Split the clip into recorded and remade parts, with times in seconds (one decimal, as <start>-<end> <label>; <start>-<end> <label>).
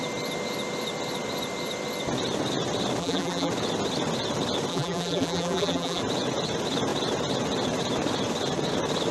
0.0-3.0 recorded; 3.0-3.5 remade; 3.5-4.7 recorded; 4.7-6.0 remade; 6.0-9.1 recorded